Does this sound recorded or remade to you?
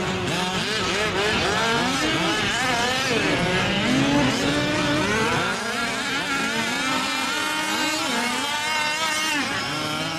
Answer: recorded